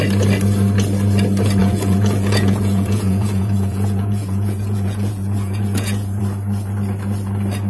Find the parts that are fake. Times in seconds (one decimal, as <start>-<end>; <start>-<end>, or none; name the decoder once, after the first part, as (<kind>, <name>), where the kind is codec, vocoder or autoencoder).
1.6-6.2 (vocoder, Vocos)